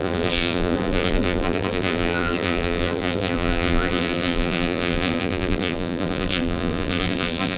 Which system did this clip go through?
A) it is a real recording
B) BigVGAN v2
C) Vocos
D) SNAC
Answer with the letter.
B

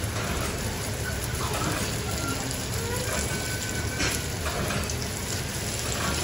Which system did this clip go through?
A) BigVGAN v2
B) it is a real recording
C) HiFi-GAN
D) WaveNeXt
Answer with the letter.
B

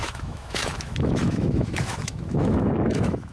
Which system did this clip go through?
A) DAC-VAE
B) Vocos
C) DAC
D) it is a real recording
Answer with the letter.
A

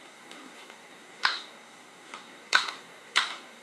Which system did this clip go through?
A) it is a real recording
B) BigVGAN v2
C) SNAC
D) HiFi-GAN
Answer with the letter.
C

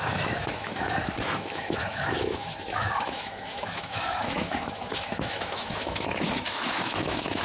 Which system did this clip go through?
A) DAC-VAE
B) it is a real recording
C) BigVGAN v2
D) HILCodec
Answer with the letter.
A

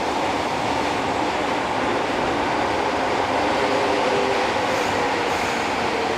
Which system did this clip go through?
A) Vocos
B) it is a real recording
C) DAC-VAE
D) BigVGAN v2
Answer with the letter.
B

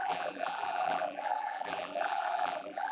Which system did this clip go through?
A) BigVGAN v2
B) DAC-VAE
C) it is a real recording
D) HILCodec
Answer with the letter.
A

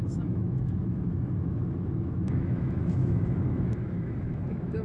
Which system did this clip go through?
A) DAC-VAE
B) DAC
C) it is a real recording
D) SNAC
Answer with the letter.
A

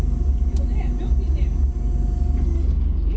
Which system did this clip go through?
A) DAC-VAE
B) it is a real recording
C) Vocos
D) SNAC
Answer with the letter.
B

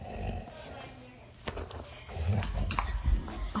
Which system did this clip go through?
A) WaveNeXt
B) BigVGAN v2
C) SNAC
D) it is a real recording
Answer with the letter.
D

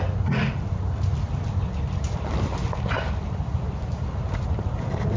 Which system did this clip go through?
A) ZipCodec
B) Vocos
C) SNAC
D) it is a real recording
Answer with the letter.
D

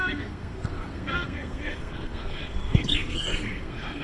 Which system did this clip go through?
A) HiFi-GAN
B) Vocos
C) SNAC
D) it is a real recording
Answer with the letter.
C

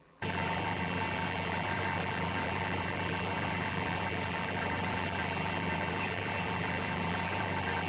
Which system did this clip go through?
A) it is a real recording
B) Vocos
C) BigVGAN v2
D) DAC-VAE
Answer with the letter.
C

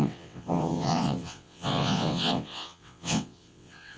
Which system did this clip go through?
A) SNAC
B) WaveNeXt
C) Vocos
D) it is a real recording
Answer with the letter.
B